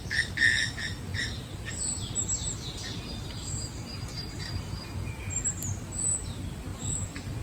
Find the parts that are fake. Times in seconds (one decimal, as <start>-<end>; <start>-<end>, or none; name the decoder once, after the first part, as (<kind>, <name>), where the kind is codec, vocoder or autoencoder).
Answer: none